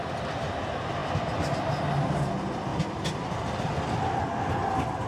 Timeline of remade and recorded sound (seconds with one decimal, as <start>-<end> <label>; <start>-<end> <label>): 0.0-2.7 recorded; 2.7-3.3 remade; 3.3-5.1 recorded